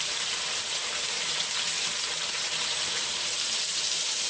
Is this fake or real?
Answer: fake